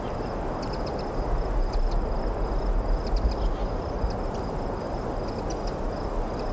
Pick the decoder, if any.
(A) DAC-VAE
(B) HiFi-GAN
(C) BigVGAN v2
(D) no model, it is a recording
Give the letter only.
D